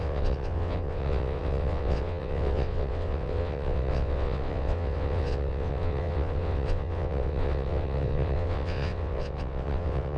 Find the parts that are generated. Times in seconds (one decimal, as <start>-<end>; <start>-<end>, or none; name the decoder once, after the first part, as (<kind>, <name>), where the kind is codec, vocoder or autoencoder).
0.0-10.2 (vocoder, WaveNeXt)